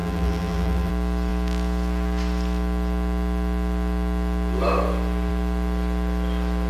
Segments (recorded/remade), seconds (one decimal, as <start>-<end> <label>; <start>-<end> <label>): 0.0-0.9 remade; 0.9-6.7 recorded

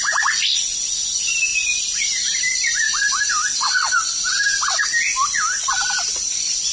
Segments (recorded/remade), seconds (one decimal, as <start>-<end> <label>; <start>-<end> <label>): 0.0-1.5 recorded; 1.5-3.3 remade; 3.3-6.7 recorded